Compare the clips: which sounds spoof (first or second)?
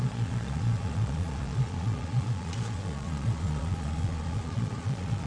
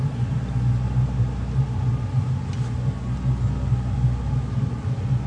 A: first